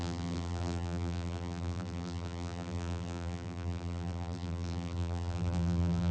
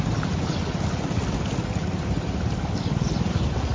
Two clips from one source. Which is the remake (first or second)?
first